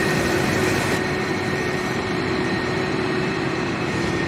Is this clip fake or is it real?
fake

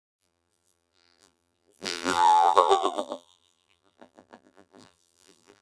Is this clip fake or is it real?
fake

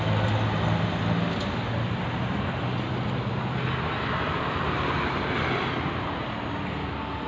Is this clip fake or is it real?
real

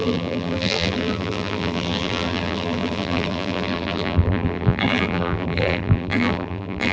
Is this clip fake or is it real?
fake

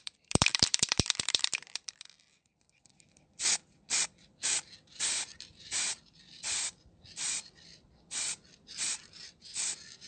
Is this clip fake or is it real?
fake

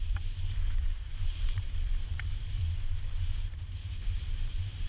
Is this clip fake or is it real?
fake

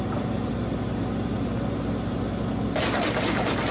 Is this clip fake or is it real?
real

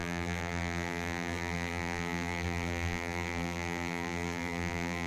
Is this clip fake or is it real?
fake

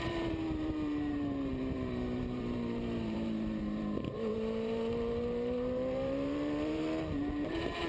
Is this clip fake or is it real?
fake